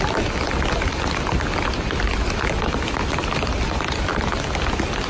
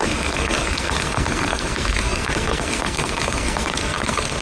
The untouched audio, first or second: first